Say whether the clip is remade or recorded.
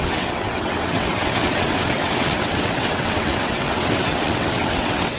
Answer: remade